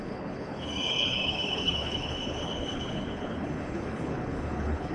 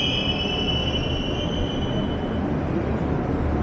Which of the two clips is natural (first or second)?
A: second